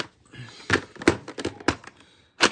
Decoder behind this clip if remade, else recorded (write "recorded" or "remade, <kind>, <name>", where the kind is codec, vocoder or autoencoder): recorded